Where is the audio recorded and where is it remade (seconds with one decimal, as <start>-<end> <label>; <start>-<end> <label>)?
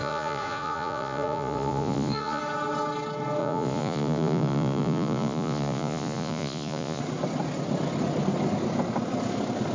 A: 0.0-2.4 remade; 2.4-3.4 recorded; 3.4-7.0 remade; 7.0-9.7 recorded